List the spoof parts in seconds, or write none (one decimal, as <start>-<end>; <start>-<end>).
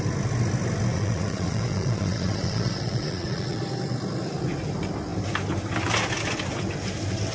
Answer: 0.9-3.6